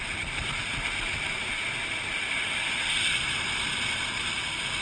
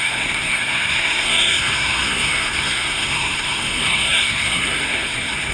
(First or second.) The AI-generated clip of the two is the second